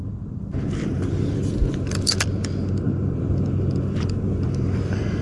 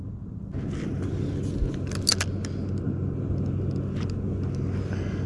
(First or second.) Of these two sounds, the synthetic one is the first